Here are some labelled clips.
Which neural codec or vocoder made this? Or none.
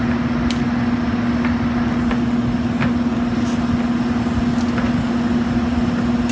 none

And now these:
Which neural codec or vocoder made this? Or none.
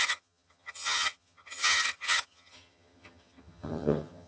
vocoder, HiFi-GAN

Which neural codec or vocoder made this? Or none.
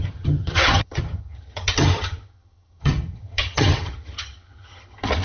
vocoder, HiFi-GAN